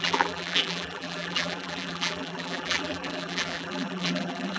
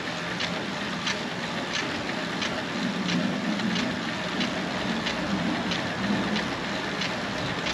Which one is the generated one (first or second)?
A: first